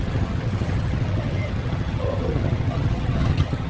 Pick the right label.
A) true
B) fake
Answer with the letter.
B